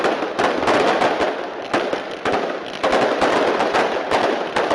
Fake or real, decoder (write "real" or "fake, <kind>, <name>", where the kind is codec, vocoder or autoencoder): real